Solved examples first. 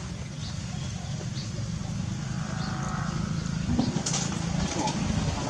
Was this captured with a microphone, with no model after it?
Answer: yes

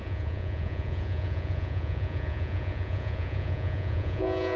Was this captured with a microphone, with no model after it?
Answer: no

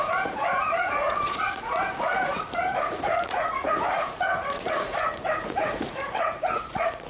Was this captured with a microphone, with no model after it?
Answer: no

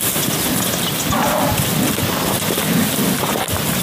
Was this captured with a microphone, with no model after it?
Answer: yes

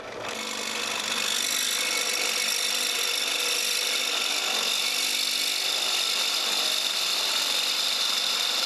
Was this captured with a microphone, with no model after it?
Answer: yes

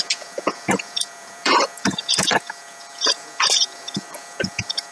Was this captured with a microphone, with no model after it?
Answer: no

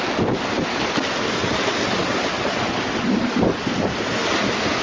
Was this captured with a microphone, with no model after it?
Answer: yes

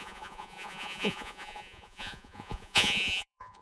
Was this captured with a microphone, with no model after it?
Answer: no